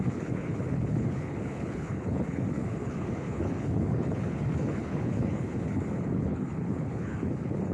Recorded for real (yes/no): no